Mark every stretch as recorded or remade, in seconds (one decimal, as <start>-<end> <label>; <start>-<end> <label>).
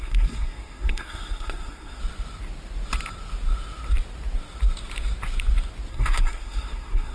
0.0-2.0 remade; 2.0-5.9 recorded; 5.9-7.1 remade